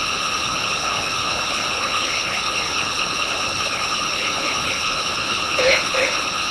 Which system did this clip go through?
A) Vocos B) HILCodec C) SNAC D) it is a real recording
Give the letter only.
B